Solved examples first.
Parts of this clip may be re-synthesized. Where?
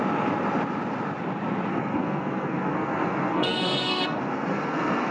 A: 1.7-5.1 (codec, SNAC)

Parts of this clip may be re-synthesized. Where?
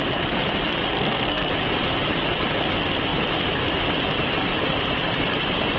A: 0.9-1.5 (codec, SNAC)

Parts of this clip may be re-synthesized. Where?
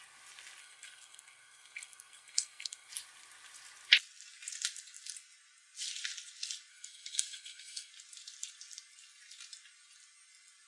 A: 0.6-2.9 (codec, SNAC); 6.7-7.9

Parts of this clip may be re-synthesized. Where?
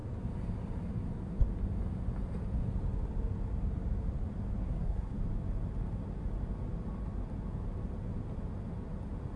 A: 4.6-5.2 (codec, SNAC)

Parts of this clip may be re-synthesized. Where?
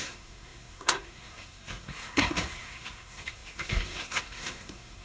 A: 0.0-5.0 (codec, SNAC)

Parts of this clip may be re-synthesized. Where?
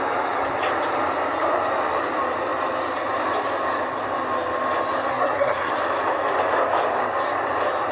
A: 5.1-5.7 (codec, SNAC)